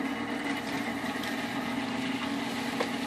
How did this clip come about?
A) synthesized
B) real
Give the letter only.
B